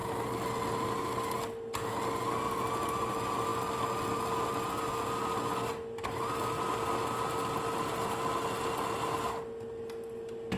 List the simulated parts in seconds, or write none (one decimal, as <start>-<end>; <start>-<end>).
none